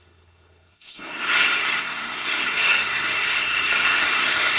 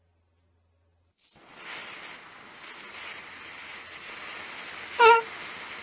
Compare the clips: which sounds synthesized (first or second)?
first